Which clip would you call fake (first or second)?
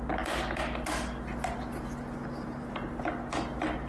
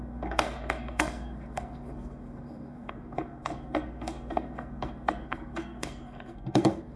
second